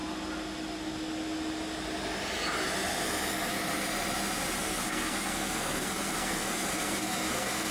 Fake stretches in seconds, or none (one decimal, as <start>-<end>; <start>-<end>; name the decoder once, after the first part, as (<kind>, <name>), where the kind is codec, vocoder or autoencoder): 4.6-7.7 (codec, SNAC)